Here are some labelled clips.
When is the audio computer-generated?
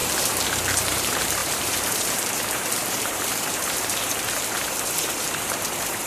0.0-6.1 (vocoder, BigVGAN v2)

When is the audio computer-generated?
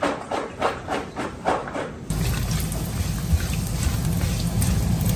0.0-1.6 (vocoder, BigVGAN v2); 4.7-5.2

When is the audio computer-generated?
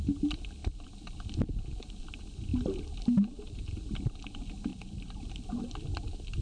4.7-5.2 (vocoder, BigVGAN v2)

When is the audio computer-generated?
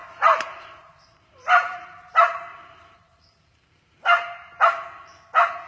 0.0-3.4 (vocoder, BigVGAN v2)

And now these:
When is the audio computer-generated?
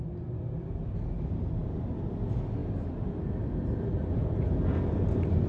2.6-4.5 (vocoder, BigVGAN v2)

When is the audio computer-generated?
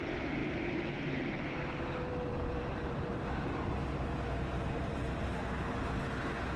0.4-1.0 (vocoder, BigVGAN v2); 2.3-5.9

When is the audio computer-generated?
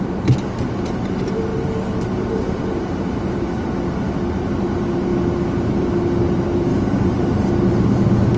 6.7-7.5 (vocoder, BigVGAN v2)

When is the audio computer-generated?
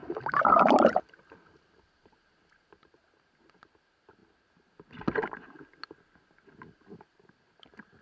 0.0-2.0 (vocoder, BigVGAN v2)